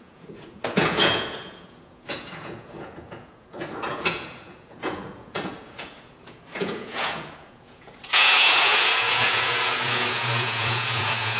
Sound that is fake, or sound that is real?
fake